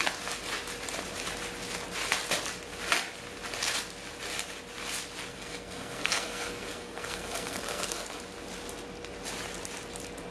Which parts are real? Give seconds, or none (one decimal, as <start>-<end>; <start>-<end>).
0.0-5.3; 8.2-10.3